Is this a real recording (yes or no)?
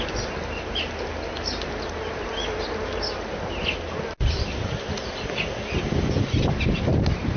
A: yes